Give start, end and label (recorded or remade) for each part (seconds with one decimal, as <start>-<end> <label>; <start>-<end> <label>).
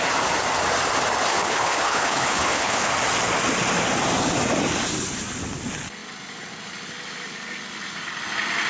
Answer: 0.0-1.3 recorded; 1.3-2.9 remade; 2.9-8.7 recorded